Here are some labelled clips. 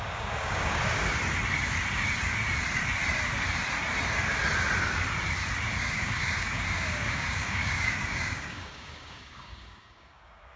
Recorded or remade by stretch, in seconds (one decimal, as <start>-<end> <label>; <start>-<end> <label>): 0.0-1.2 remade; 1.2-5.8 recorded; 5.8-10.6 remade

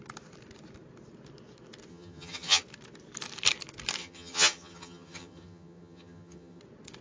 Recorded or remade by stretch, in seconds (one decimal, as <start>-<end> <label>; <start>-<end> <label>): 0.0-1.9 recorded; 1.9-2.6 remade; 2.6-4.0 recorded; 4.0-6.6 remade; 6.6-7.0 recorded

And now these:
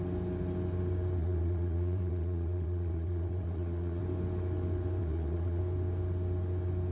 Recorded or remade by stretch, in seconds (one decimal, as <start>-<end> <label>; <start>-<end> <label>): 0.0-1.2 recorded; 1.2-4.0 remade; 4.0-5.0 recorded; 5.0-5.6 remade; 5.6-6.9 recorded